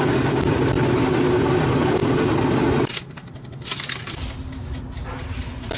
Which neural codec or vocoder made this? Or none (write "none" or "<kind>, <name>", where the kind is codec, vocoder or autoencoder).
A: none